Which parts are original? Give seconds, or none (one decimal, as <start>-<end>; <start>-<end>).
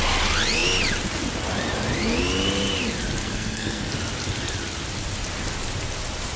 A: 0.0-3.2; 3.9-6.4